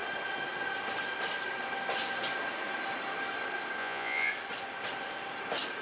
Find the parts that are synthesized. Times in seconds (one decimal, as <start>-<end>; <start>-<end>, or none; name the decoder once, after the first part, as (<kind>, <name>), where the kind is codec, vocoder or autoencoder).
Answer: 3.8-4.3 (vocoder, Vocos)